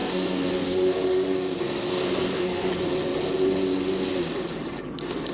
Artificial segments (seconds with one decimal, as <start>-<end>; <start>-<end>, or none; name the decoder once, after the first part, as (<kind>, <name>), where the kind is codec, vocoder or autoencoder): 0.0-2.7 (codec, SNAC)